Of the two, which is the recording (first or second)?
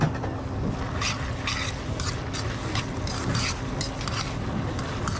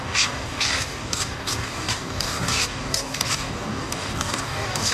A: first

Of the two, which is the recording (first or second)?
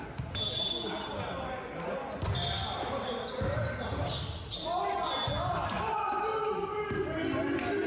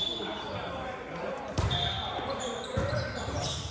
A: first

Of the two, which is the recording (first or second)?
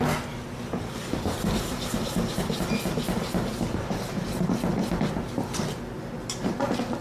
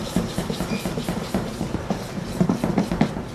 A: first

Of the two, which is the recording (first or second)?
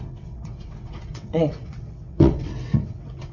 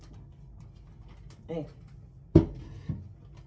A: second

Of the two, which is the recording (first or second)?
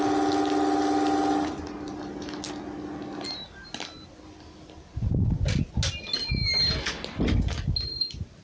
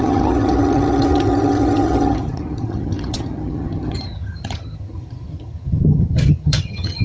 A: first